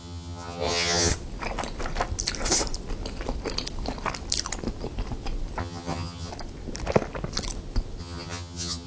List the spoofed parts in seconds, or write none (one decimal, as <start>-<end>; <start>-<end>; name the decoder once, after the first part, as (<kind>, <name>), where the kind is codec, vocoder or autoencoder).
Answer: 0.0-1.1 (vocoder, HiFi-GAN); 5.6-6.3; 8.0-8.9